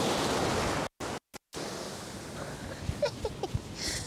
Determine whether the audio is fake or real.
real